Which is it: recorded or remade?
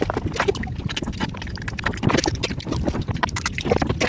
recorded